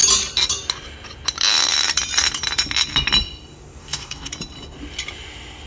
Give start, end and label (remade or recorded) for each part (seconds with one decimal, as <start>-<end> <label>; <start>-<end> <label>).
0.0-3.8 recorded; 3.8-4.3 remade; 4.3-5.7 recorded